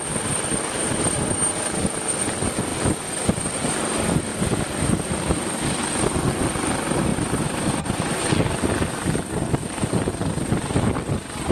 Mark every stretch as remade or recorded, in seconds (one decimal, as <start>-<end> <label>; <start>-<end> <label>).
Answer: 0.0-7.1 recorded; 7.1-8.3 remade; 8.3-11.5 recorded